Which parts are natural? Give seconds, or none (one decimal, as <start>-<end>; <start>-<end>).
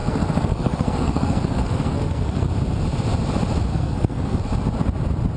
2.5-3.7; 4.4-5.4